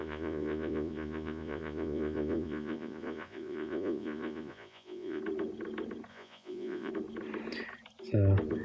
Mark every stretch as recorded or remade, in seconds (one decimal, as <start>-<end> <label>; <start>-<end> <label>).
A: 0.0-5.2 remade; 5.2-6.1 recorded; 6.1-6.9 remade; 6.9-8.6 recorded